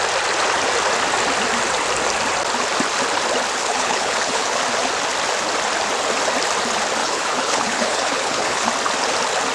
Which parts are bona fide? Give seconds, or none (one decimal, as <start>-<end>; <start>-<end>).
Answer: 0.0-3.6; 4.6-7.0; 8.7-9.5